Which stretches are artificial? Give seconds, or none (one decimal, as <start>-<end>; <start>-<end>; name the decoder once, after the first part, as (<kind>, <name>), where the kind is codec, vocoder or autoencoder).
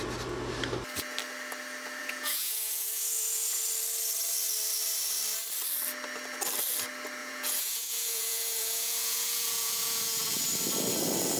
2.0-3.6 (vocoder, Vocos); 7.2-10.4